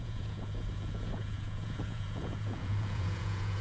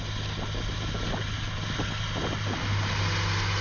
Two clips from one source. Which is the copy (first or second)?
first